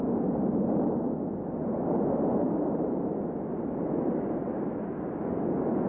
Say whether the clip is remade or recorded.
recorded